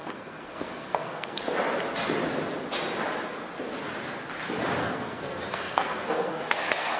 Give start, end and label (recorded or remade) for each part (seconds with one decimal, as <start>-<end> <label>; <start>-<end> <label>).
0.0-1.4 remade; 1.4-4.8 recorded; 4.8-7.0 remade